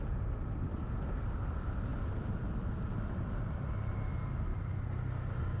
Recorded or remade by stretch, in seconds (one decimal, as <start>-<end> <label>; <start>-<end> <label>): 0.0-5.6 recorded

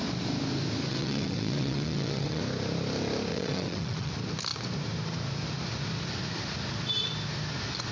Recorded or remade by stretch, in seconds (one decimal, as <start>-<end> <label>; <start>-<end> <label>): 0.0-0.9 recorded; 0.9-2.4 remade; 2.4-3.3 recorded; 3.3-4.1 remade; 4.1-7.9 recorded

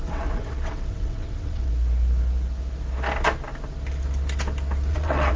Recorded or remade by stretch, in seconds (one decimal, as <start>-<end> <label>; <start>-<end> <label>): 0.0-1.7 remade; 1.7-4.9 recorded; 4.9-5.4 remade

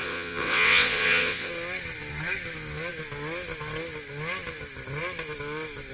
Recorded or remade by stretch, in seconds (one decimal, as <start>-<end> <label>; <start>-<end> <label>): 0.0-1.5 remade; 1.5-5.9 recorded

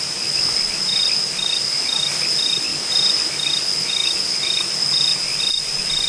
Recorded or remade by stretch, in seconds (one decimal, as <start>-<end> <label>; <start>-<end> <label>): 0.0-6.1 recorded

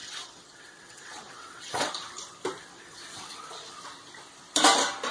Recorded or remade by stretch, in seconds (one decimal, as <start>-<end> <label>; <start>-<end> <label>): 0.0-1.9 remade; 1.9-2.7 recorded; 2.7-3.7 remade; 3.7-5.1 recorded